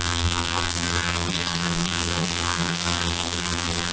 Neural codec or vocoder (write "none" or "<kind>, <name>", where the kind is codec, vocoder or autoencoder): vocoder, BigVGAN v2